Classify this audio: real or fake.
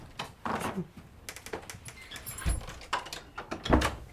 real